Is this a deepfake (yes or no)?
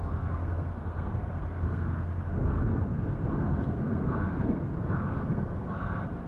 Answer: yes